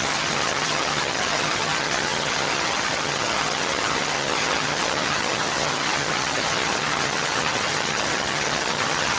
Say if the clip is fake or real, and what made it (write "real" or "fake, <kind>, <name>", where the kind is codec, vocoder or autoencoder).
fake, vocoder, HiFi-GAN